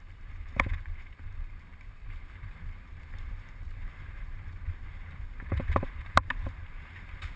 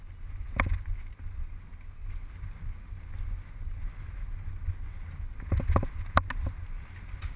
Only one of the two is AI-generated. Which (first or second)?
first